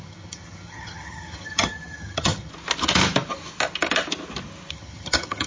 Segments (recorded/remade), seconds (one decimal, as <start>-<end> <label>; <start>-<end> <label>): 0.0-2.5 remade; 2.5-4.7 recorded; 4.7-5.5 remade